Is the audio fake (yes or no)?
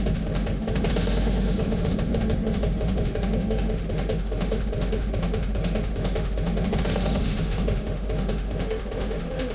yes